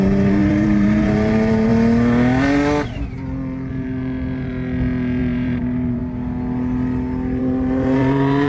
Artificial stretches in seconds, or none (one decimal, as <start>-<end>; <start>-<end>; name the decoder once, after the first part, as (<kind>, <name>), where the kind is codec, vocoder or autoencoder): 0.0-1.7 (vocoder, BigVGAN v2); 3.7-4.5; 5.2-6.0; 7.4-8.5